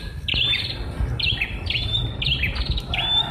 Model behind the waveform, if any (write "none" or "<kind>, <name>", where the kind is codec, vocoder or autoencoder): none